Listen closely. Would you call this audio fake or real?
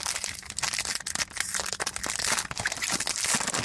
real